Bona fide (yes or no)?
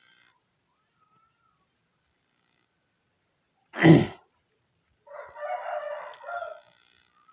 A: yes